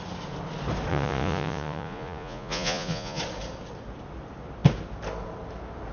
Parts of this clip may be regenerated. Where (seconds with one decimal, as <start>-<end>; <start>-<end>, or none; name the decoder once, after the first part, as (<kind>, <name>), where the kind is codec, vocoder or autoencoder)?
0.9-3.2 (vocoder, Vocos)